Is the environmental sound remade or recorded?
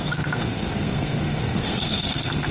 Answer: remade